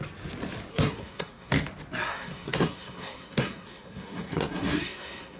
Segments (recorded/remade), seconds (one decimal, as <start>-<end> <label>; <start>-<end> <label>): 0.0-0.7 recorded; 0.7-1.5 remade; 1.5-2.1 recorded; 2.1-5.4 remade